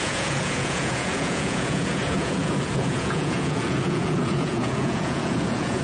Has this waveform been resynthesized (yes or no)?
yes